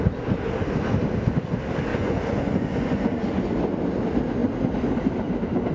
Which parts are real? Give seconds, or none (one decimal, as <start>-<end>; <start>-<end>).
0.0-1.9; 3.5-5.7